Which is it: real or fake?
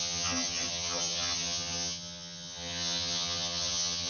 fake